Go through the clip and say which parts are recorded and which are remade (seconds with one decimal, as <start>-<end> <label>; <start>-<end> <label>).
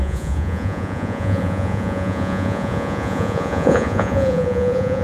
0.0-5.0 remade